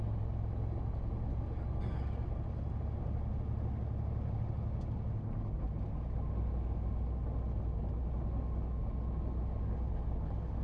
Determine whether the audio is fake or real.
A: real